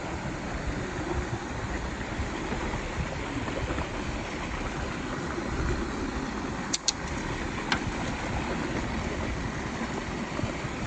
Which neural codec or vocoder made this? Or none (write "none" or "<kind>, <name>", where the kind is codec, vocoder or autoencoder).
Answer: none